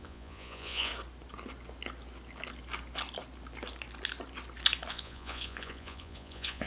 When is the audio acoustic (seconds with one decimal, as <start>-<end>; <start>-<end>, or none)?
0.9-4.9